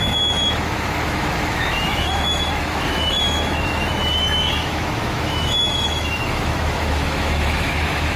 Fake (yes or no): yes